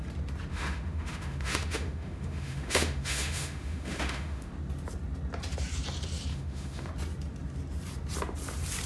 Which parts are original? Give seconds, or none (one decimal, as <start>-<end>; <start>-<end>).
0.0-0.5; 4.5-6.3; 6.9-8.9